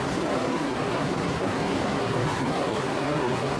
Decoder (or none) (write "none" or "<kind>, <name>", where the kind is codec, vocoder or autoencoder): codec, SNAC